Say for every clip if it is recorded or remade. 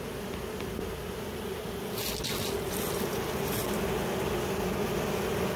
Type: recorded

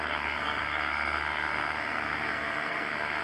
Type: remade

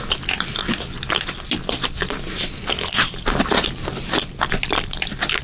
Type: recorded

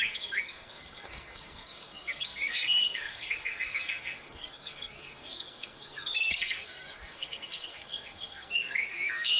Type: remade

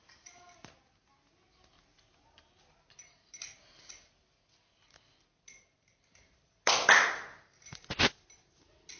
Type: recorded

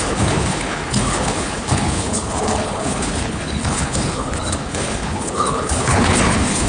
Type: remade